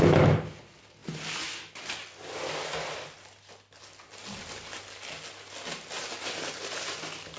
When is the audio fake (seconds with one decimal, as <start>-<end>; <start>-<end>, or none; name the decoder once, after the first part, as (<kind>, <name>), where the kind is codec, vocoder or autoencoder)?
none